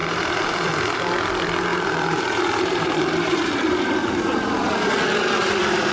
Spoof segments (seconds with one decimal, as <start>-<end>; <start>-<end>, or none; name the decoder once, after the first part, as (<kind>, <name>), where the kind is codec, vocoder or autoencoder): 0.0-0.7 (vocoder, BigVGAN v2); 1.7-4.9